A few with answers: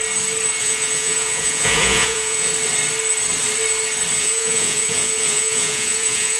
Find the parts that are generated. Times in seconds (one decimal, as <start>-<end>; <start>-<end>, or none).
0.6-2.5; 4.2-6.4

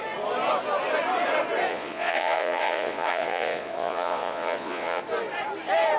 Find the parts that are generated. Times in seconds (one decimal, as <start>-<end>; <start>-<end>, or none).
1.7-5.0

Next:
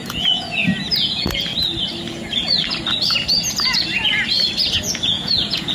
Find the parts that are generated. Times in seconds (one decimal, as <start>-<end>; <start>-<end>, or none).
0.0-0.6; 1.1-1.5; 4.9-5.7

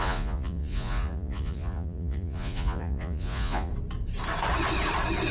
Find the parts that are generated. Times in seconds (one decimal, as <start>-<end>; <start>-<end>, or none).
0.0-3.7